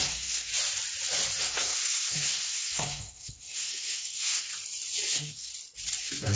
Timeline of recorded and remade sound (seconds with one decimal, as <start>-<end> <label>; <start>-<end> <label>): 0.0-0.5 remade; 0.5-1.4 recorded; 1.4-4.5 remade; 4.5-5.1 recorded; 5.1-5.5 remade; 5.5-6.0 recorded; 6.0-6.4 remade